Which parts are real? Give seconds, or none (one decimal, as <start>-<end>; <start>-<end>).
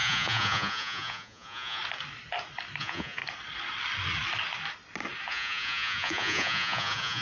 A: 1.8-2.8; 3.2-5.3